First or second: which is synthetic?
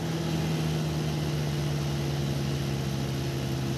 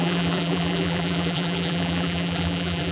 second